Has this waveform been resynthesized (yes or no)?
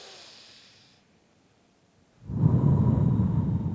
no